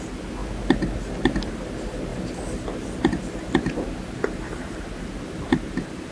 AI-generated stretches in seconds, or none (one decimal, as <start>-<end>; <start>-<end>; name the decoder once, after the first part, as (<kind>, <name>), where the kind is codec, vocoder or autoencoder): none